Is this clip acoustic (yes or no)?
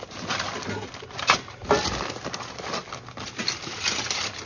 yes